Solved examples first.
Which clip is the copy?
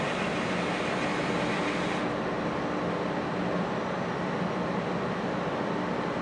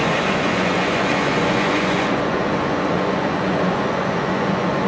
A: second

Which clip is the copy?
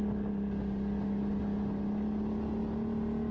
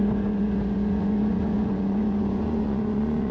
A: second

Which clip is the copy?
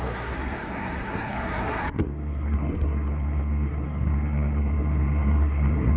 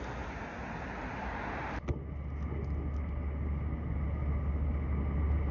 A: first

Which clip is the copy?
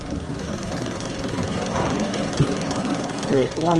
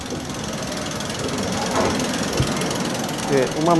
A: first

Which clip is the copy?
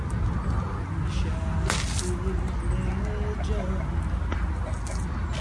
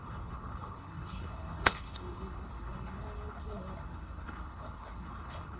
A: second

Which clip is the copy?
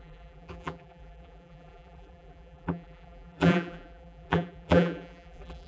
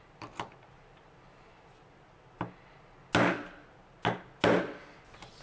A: first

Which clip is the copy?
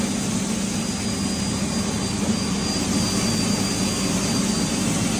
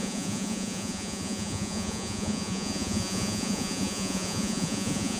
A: second